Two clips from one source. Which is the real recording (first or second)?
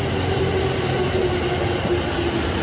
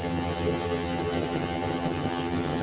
first